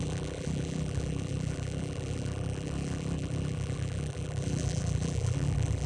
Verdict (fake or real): fake